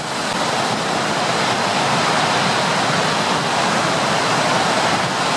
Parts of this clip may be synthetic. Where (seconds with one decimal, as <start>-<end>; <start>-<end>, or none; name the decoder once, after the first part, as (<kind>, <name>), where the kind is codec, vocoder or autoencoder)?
none